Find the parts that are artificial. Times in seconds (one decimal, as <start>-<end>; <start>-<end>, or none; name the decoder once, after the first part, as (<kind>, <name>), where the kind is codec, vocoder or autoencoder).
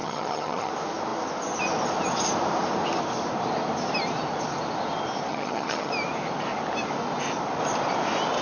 0.0-0.7 (vocoder, HiFi-GAN); 5.3-5.9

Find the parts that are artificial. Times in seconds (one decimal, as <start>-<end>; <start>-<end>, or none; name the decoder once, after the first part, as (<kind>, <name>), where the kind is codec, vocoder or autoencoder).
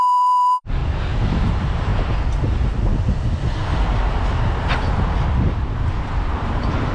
0.0-0.8 (vocoder, BigVGAN v2); 1.4-1.9; 6.0-6.9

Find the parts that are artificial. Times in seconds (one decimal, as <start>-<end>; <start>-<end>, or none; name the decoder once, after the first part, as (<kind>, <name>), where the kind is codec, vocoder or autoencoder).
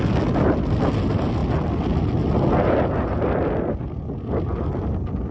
none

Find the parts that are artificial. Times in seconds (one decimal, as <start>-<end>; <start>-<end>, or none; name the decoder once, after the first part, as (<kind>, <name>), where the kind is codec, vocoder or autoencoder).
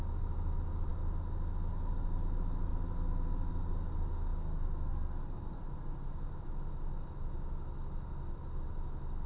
none